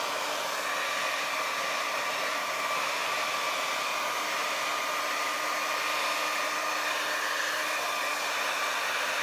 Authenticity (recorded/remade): recorded